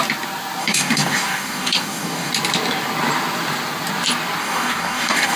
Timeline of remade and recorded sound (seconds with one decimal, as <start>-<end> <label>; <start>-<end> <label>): 0.0-0.6 recorded; 0.6-2.3 remade; 2.3-4.4 recorded; 4.4-5.4 remade

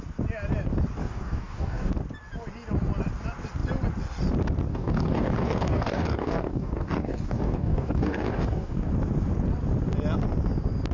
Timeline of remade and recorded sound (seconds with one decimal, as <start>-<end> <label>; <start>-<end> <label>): 0.0-1.0 recorded; 1.0-1.9 remade; 1.9-4.7 recorded; 4.7-8.9 remade; 8.9-10.9 recorded